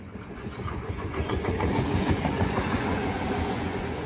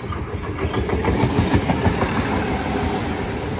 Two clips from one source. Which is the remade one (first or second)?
first